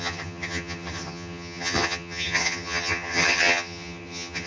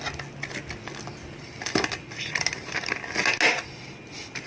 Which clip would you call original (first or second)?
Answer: second